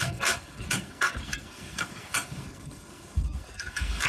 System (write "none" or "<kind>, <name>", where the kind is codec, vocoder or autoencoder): codec, SNAC